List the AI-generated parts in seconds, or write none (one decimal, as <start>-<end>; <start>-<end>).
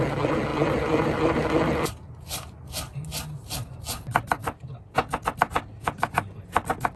0.5-1.9